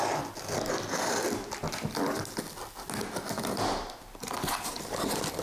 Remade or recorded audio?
recorded